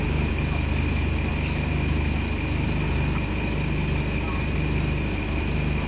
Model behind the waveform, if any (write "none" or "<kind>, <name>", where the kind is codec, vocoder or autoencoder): none